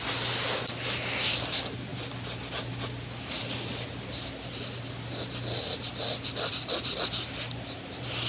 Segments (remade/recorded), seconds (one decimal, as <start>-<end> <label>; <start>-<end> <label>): 0.0-8.3 recorded